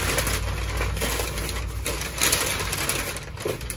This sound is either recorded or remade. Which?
recorded